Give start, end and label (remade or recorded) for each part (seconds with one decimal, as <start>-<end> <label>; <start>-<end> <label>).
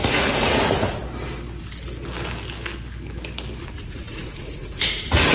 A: 0.0-1.0 remade; 1.0-3.6 recorded; 3.6-5.3 remade